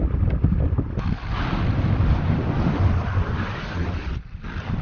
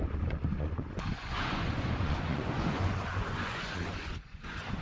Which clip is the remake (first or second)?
second